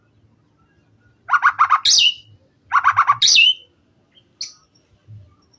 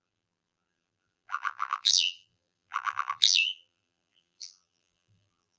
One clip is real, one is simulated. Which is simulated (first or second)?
second